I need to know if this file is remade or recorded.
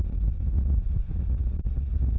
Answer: remade